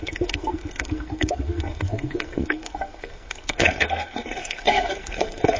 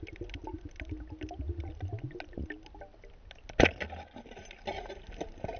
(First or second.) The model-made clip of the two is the first